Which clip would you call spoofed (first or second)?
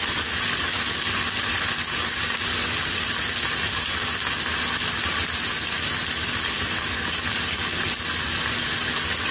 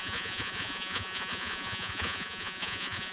second